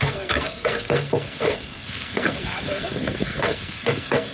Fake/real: fake